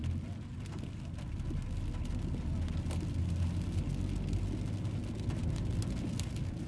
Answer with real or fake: real